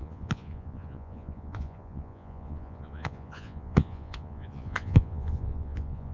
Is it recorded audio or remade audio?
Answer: remade